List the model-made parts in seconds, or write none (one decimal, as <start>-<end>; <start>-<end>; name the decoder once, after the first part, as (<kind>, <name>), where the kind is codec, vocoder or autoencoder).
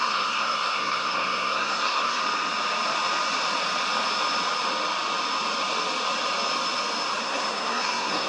0.0-2.2 (codec, SNAC); 7.2-8.3